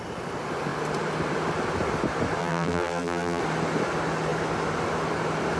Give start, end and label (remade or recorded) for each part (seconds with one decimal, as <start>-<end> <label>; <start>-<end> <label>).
0.0-2.4 recorded; 2.4-3.4 remade; 3.4-5.6 recorded